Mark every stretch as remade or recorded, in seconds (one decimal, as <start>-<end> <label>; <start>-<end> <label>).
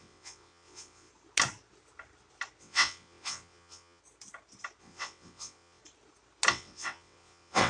0.0-1.1 remade; 1.1-2.6 recorded; 2.6-4.0 remade; 4.0-4.8 recorded; 4.8-5.8 remade; 5.8-6.5 recorded; 6.5-7.7 remade